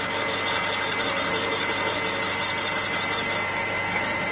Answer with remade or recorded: recorded